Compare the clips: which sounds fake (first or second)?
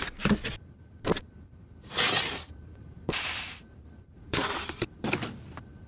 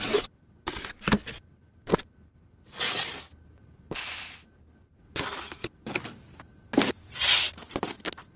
first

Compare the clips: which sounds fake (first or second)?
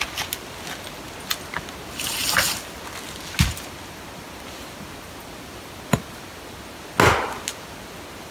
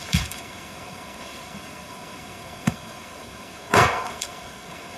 second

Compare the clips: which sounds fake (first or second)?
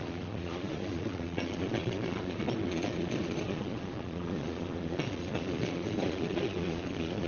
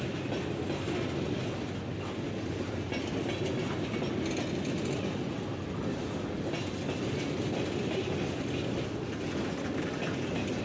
first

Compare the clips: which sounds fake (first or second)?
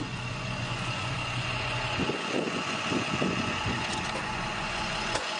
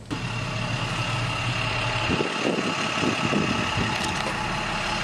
first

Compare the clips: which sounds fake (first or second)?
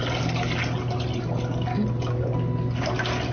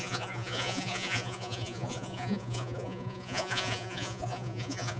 second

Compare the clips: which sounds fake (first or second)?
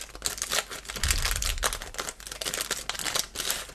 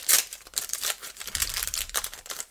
second